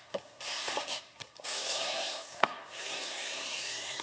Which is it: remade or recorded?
remade